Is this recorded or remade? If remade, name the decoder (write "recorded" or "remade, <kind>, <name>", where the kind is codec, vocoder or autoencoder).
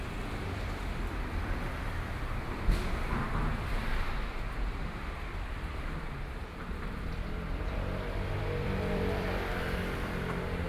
remade, vocoder, BigVGAN v2